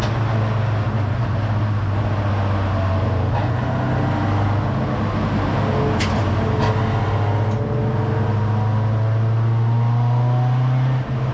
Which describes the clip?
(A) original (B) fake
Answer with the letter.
A